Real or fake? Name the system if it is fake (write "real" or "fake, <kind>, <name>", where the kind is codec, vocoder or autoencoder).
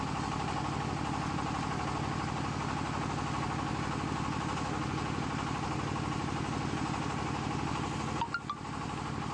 real